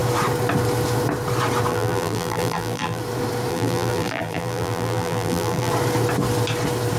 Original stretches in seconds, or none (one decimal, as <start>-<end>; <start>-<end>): 0.0-1.7; 3.0-3.5; 5.7-7.0